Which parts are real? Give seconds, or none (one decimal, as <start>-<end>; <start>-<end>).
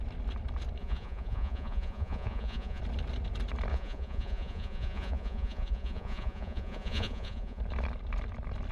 0.0-0.8; 2.8-3.7; 7.6-8.7